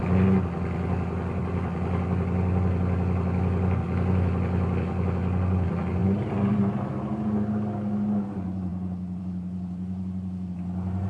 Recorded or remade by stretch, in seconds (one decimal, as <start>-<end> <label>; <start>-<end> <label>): 0.0-6.0 recorded; 6.0-6.9 remade; 6.9-11.1 recorded